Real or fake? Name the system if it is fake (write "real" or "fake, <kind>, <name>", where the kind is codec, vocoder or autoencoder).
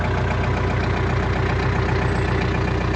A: real